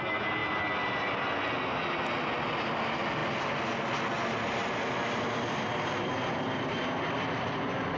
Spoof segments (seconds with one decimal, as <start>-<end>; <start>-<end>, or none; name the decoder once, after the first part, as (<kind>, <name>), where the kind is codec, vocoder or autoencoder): none